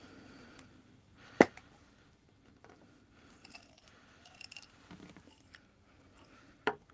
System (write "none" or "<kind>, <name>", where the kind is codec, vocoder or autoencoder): none